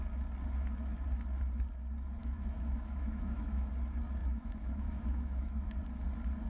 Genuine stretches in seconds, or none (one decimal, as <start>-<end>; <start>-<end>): 0.0-2.2; 3.7-4.2; 5.8-6.5